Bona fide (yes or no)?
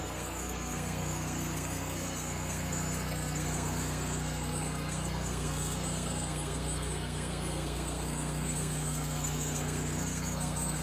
no